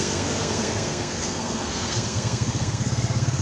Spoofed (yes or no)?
yes